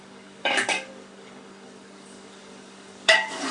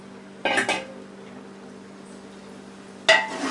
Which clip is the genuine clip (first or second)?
second